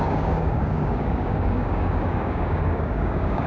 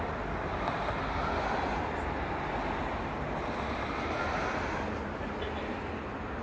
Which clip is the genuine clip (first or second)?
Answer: second